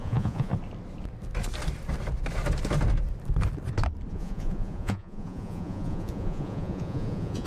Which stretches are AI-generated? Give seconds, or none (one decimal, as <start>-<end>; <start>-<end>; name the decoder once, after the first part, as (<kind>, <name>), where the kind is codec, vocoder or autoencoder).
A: 0.0-0.5 (vocoder, Vocos); 4.1-7.5